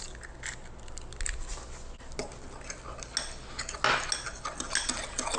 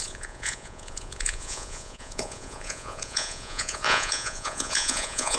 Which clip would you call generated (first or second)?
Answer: second